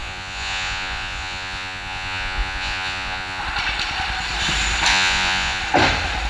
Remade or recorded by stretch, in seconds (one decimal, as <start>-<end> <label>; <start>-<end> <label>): 0.0-3.4 remade; 3.4-4.9 recorded; 4.9-5.6 remade; 5.6-6.3 recorded